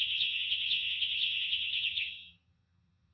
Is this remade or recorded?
remade